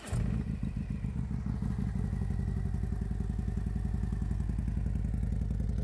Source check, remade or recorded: recorded